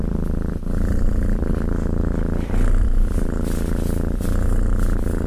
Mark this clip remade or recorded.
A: recorded